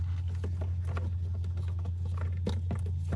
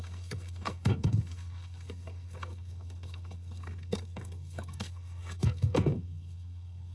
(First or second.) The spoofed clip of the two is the second